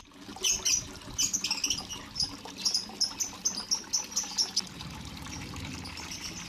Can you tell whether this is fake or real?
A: real